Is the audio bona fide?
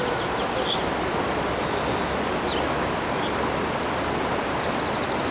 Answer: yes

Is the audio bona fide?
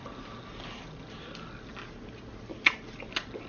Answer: yes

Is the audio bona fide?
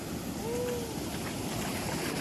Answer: yes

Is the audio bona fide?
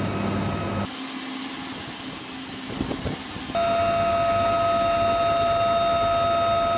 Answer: yes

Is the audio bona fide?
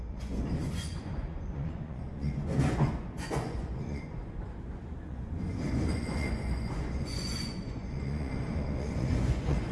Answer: no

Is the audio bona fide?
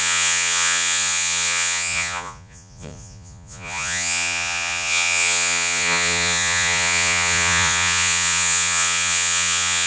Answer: no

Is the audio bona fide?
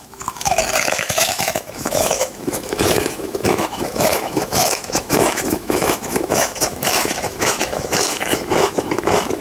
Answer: no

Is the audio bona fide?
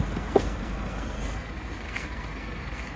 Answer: no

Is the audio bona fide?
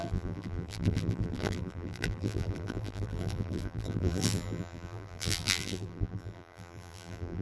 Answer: no